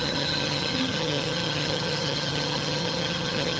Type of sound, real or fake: fake